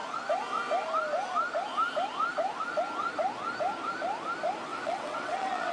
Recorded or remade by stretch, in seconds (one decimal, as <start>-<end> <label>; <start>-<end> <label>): 0.0-4.7 recorded; 4.7-5.7 remade